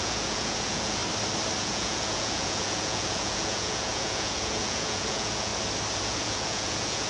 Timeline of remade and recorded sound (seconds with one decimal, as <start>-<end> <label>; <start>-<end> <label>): 0.0-1.0 remade; 1.0-1.6 recorded; 1.6-5.5 remade; 5.5-6.0 recorded; 6.0-7.1 remade